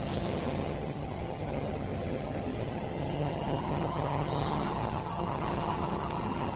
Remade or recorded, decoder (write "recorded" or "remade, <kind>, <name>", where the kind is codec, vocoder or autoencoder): remade, vocoder, HiFi-GAN